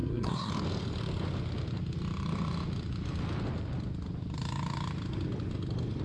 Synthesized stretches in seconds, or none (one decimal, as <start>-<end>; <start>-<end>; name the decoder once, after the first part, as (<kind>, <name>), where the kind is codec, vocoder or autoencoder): 0.0-0.5 (codec, SNAC)